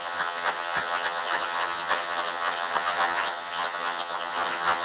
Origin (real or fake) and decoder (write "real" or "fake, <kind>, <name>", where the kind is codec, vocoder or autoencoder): fake, vocoder, HiFi-GAN